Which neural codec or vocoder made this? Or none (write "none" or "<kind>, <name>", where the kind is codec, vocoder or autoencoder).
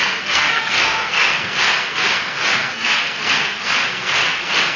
codec, SNAC